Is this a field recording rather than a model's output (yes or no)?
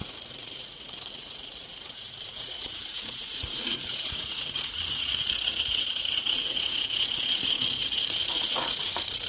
no